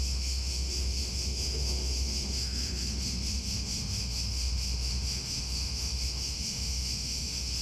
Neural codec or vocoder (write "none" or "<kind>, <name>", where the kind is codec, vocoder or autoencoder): autoencoder, DAC-VAE